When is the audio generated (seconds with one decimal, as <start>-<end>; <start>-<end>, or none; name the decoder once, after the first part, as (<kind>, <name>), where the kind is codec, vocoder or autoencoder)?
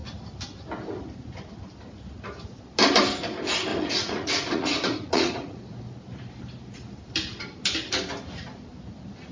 3.7-5.6 (vocoder, Vocos)